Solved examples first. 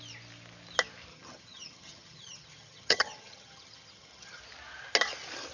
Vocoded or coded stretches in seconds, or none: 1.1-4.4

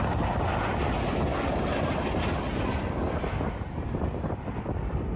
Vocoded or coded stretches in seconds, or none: none

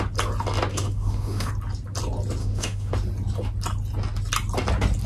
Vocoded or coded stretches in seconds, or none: 0.7-1.5; 2.4-2.9

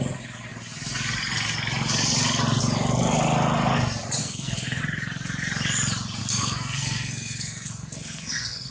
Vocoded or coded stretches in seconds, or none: 4.2-4.8; 6.2-8.7